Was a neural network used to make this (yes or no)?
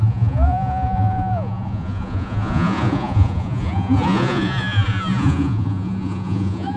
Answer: yes